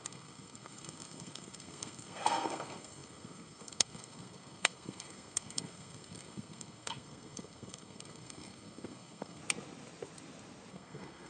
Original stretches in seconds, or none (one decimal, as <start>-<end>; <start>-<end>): 9.4-10.7